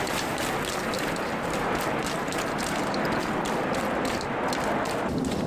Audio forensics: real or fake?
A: real